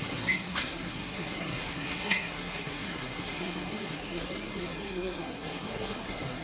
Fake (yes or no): yes